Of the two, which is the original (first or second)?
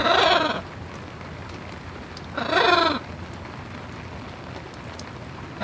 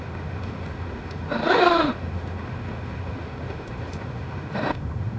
first